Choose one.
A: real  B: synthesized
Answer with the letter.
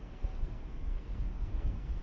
B